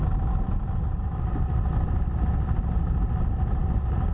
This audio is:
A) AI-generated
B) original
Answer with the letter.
B